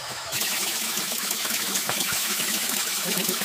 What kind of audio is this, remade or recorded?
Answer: remade